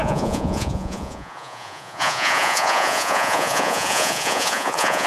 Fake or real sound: fake